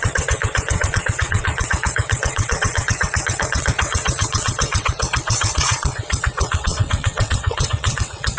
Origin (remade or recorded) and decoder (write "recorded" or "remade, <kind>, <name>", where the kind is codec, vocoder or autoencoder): remade, vocoder, WaveNeXt